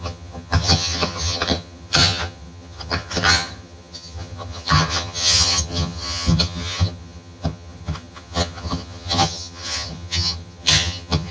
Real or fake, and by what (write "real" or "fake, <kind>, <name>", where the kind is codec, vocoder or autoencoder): fake, vocoder, HiFi-GAN